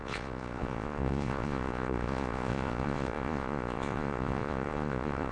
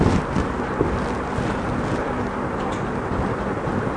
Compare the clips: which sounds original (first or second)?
second